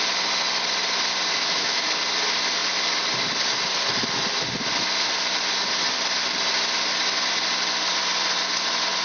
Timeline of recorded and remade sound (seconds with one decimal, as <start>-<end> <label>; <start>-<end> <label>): 0.0-1.3 recorded; 1.3-2.0 remade; 2.0-9.0 recorded